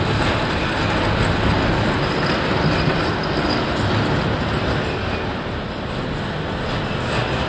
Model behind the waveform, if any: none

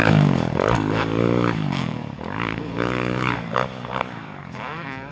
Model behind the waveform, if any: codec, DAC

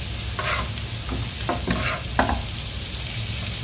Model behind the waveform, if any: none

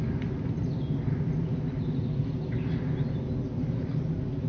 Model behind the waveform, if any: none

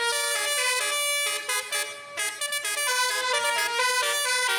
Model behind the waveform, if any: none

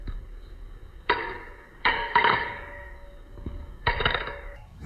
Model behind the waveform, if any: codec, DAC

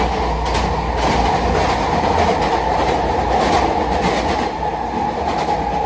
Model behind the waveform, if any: none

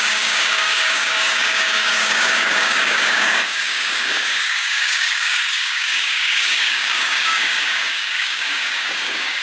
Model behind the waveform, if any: codec, DAC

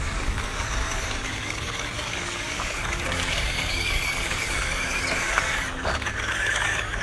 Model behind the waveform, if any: codec, DAC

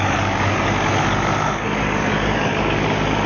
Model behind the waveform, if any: codec, DAC